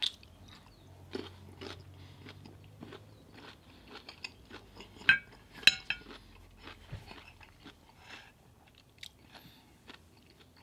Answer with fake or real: real